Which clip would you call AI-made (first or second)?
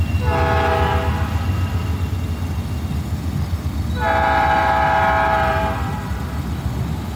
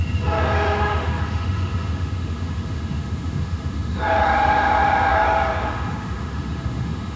second